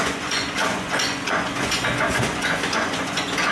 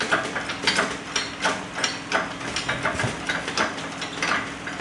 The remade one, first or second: first